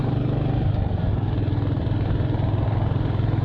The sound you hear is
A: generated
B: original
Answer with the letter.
A